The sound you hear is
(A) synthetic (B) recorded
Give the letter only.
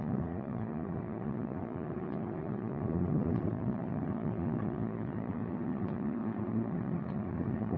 A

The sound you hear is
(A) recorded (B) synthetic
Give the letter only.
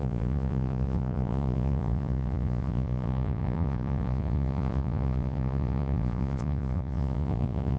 B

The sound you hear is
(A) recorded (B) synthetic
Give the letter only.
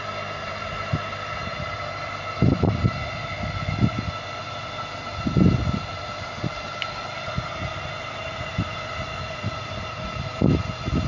A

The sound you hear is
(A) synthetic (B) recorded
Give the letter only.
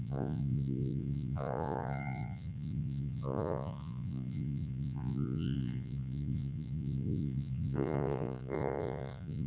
A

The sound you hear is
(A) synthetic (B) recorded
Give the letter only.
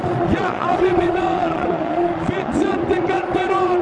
A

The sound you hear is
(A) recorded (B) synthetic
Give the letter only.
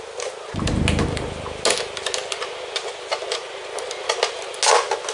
A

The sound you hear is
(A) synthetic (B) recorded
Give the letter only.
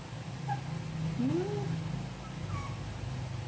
B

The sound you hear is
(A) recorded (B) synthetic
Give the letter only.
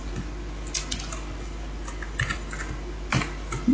A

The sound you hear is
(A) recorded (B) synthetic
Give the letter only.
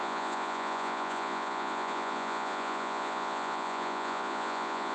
B